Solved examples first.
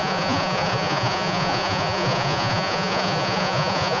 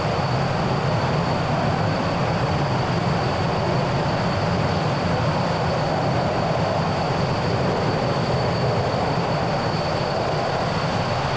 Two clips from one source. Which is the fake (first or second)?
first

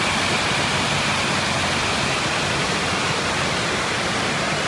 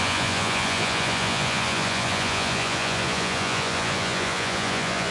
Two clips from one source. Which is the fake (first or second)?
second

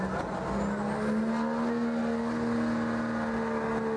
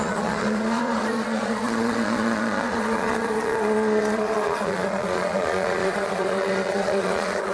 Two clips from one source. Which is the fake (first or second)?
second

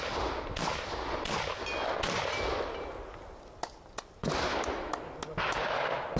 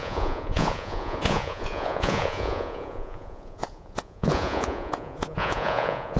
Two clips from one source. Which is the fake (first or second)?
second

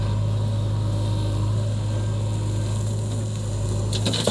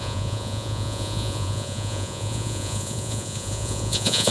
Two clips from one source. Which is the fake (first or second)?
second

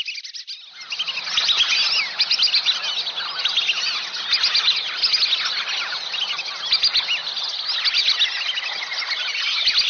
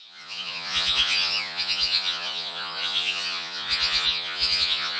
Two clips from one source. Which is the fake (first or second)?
second